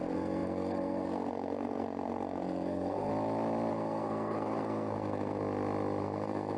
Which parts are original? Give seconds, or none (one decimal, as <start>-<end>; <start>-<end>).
3.1-3.7; 5.4-6.0